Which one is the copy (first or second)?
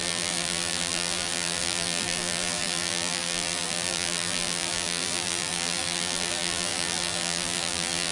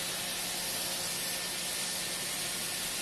first